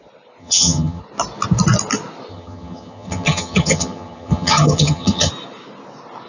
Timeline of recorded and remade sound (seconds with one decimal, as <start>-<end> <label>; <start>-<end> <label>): 0.0-0.4 recorded; 0.4-1.0 remade; 1.0-2.3 recorded; 2.3-5.3 remade; 5.3-6.3 recorded